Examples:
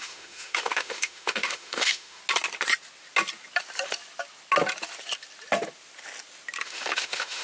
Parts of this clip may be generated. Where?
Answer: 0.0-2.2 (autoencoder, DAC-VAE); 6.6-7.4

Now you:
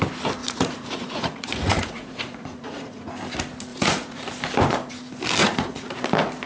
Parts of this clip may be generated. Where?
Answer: 0.4-3.1 (vocoder, Vocos); 3.7-4.3; 5.4-6.0

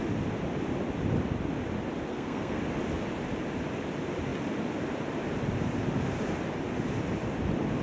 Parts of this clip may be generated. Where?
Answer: 2.1-2.6 (codec, SNAC)

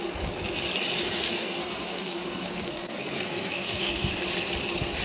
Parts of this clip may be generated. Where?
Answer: 1.2-4.2 (codec, SNAC)